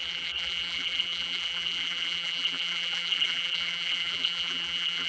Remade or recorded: remade